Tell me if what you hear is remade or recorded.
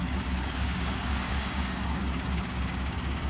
remade